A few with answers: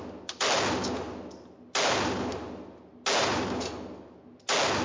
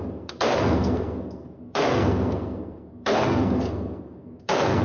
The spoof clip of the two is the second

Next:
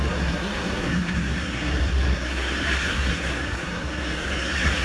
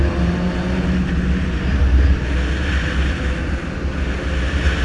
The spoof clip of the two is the first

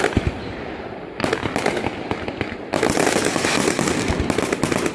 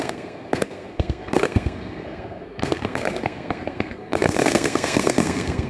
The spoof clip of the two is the second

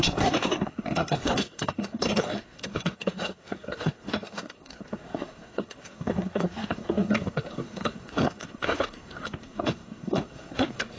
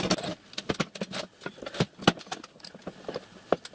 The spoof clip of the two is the first